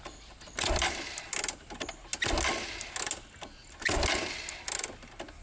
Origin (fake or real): real